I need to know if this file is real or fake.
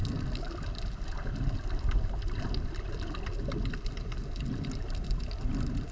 real